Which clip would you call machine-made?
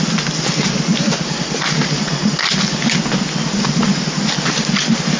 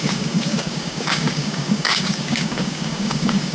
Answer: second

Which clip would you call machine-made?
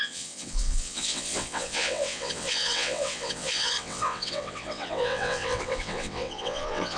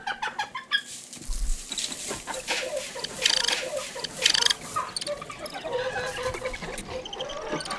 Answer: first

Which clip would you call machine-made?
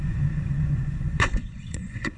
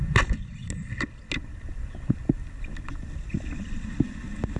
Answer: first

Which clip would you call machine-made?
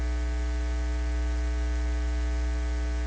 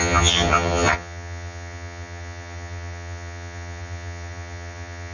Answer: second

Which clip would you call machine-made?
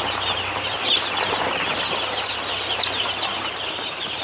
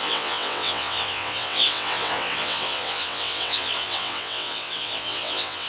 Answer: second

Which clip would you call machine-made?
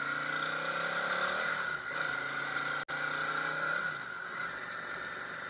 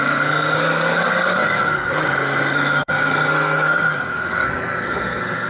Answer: second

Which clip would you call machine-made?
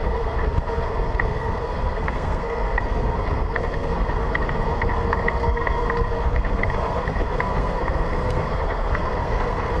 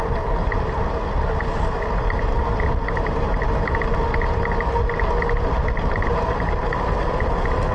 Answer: first